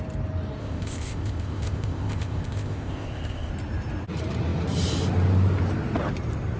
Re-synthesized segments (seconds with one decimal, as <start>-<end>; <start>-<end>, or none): 0.6-3.5